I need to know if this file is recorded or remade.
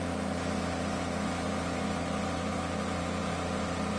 remade